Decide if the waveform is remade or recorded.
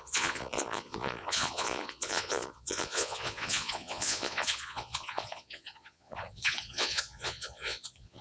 remade